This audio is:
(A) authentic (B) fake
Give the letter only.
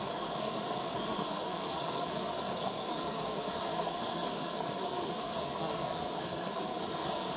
B